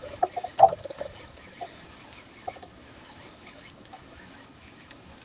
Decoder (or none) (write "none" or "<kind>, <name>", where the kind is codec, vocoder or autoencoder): autoencoder, DAC-VAE